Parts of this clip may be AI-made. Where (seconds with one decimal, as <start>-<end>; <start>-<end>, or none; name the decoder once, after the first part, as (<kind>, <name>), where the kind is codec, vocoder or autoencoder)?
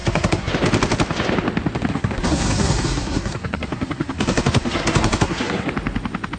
0.0-0.5 (codec, SNAC); 1.9-5.7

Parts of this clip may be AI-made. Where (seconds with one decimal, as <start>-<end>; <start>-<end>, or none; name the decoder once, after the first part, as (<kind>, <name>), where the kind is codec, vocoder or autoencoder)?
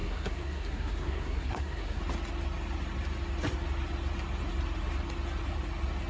0.0-2.0 (codec, SNAC)